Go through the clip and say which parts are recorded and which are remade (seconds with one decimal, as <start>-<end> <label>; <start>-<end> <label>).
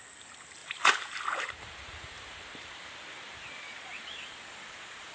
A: 0.0-3.7 recorded; 3.7-5.1 remade